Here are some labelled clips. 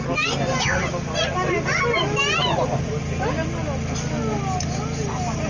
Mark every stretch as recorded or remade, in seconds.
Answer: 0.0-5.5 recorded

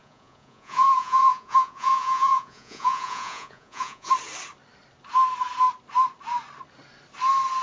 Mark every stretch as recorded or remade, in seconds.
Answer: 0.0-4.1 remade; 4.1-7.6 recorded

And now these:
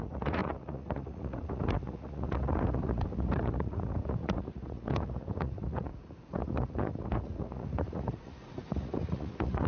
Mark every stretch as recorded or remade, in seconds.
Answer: 0.0-9.7 remade